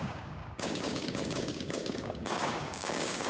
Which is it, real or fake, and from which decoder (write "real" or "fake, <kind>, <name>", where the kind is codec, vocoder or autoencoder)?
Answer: fake, codec, DAC